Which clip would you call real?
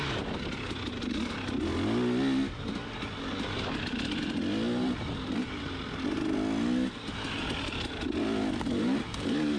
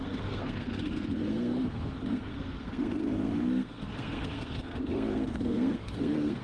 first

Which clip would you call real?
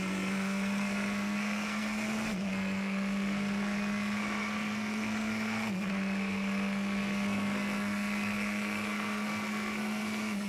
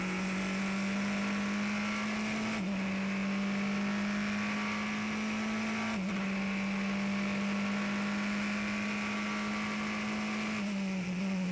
second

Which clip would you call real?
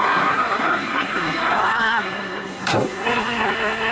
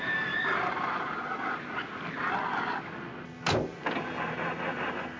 second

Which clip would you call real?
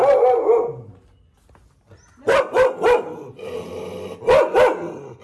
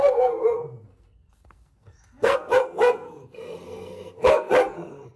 first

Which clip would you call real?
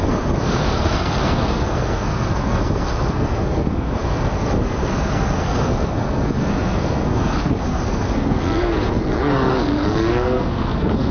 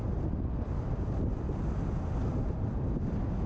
second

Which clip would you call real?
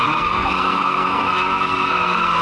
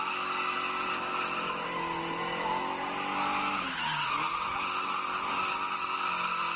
second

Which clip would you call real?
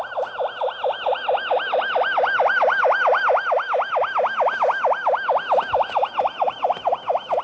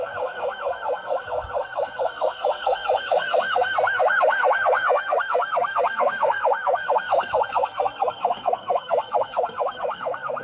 first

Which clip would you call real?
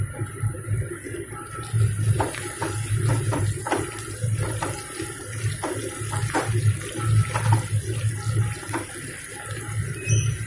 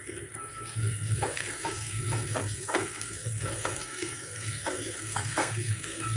first